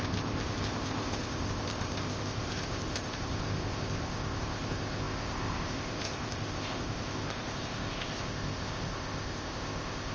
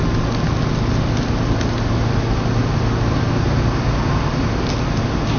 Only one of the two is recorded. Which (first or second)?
second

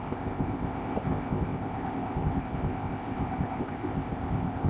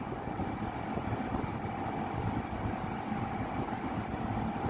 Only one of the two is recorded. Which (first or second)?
second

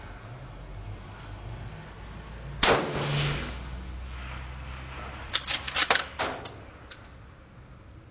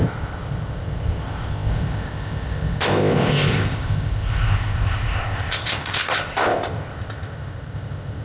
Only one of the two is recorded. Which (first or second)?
first